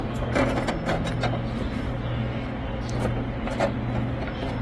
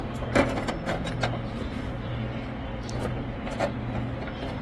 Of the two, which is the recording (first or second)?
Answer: first